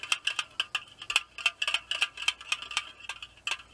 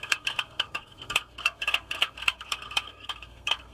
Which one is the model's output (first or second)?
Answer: second